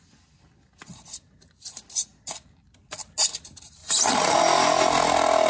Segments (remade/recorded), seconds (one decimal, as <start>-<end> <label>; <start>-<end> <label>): 0.0-3.8 recorded; 3.8-4.4 remade; 4.4-5.5 recorded